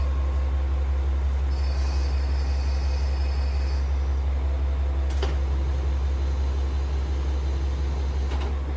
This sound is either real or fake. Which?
real